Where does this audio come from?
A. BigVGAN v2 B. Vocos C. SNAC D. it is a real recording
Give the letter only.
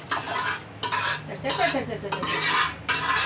D